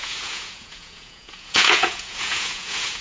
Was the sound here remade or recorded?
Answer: remade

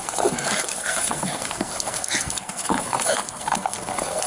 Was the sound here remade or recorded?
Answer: remade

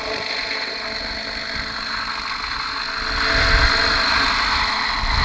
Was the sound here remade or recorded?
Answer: recorded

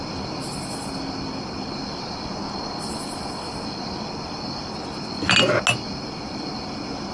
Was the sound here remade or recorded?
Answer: recorded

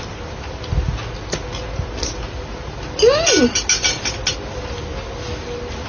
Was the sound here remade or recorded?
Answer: recorded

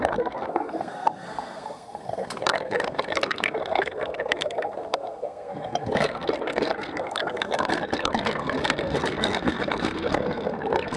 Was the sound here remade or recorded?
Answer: remade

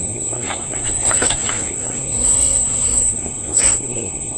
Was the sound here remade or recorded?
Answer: remade